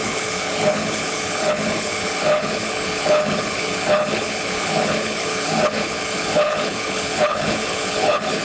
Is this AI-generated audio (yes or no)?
yes